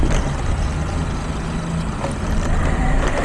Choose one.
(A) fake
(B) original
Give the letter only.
B